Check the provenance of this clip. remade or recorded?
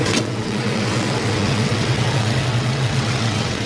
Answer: remade